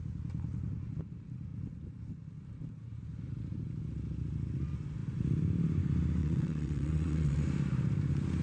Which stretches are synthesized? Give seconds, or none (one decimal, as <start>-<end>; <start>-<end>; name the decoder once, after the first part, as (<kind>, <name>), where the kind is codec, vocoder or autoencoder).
6.2-7.4 (vocoder, WaveNeXt)